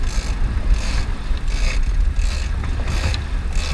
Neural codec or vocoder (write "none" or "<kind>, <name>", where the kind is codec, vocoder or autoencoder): none